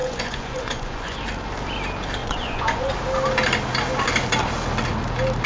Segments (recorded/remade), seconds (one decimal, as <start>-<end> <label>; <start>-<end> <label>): 0.0-1.2 remade; 1.2-2.2 recorded; 2.2-2.9 remade; 2.9-5.5 recorded